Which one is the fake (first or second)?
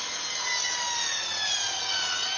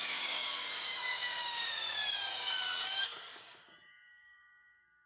second